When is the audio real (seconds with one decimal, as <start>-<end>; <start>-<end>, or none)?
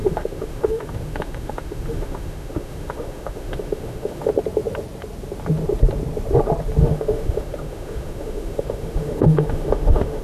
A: 4.3-6.8